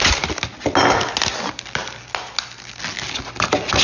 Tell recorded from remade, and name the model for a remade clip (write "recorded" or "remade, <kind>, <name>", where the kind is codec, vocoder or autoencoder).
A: recorded